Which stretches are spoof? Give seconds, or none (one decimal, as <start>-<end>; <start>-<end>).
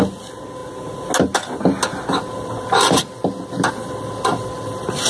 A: none